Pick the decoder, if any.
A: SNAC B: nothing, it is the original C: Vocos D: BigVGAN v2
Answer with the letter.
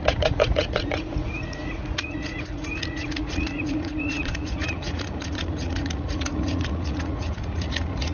C